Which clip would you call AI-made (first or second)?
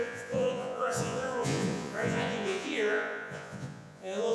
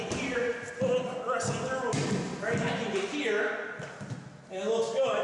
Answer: first